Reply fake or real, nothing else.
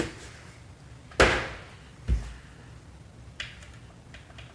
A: real